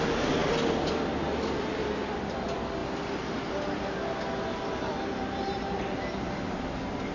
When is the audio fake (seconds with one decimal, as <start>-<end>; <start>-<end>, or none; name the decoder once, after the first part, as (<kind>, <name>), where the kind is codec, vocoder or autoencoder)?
none